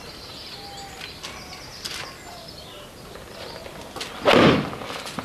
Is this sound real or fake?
real